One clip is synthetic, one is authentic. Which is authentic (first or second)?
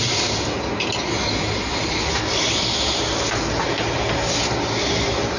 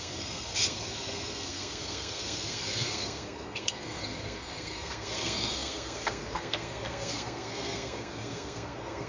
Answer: first